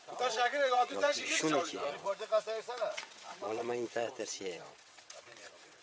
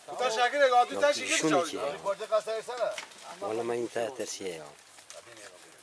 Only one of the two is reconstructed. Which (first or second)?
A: first